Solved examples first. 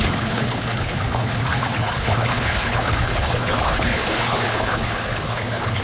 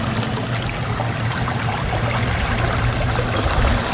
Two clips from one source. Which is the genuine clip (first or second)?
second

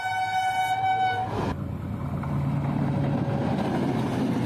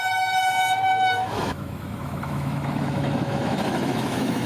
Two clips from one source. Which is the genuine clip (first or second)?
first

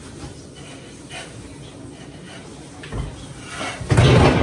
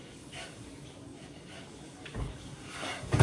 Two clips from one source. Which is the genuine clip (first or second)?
first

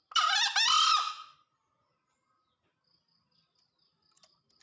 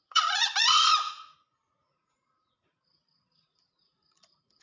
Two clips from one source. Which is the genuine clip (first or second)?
first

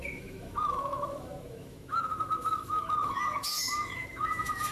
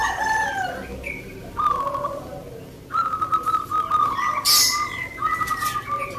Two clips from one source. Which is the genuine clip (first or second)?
second